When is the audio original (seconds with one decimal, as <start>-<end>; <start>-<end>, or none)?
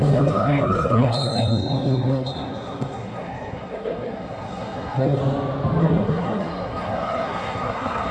5.2-5.8